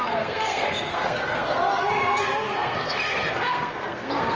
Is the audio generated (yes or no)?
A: yes